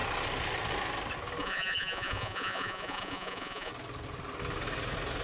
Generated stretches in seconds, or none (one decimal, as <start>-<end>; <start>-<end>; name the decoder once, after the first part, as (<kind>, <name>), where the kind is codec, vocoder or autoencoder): 1.4-3.7 (vocoder, Vocos)